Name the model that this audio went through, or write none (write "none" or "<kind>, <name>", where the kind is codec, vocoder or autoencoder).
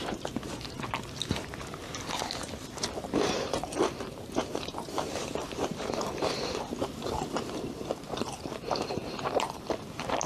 vocoder, BigVGAN v2